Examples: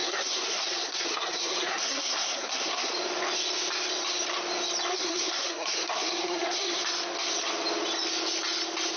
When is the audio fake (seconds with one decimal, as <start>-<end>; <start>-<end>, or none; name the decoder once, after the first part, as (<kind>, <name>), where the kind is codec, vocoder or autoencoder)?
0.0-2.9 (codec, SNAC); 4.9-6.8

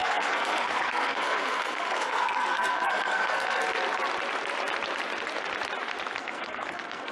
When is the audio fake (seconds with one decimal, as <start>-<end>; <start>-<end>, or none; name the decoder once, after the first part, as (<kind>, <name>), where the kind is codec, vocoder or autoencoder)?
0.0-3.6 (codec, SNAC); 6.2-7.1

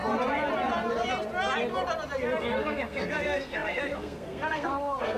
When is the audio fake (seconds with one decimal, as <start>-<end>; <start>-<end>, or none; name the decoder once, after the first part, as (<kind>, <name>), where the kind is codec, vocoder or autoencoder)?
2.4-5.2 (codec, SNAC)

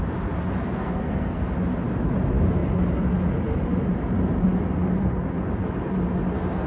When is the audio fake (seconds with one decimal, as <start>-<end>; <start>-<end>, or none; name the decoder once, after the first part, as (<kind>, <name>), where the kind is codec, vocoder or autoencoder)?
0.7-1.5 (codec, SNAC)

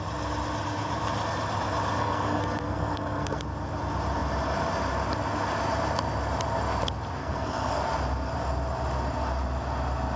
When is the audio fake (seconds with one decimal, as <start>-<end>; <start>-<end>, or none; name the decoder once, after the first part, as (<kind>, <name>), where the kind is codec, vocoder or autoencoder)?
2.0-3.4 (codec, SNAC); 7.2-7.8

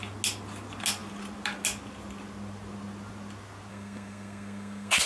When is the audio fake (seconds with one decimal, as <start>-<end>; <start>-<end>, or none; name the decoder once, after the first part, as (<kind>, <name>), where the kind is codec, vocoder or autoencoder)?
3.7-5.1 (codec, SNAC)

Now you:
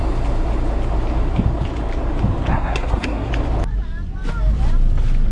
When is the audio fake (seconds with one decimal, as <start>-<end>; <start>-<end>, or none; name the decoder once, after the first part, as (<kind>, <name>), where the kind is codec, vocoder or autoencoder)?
2.5-3.3 (codec, SNAC)

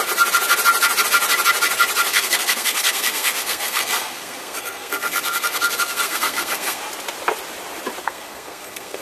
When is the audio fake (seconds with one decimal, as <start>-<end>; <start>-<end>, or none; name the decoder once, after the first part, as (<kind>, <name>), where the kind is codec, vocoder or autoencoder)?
2.1-6.8 (codec, SNAC); 8.0-9.0